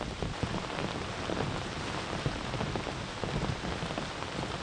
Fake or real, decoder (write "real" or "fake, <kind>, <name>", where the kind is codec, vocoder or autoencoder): real